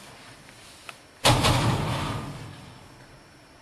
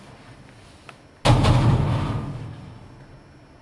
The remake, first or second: first